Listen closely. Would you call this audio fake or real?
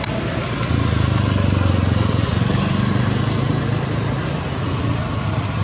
real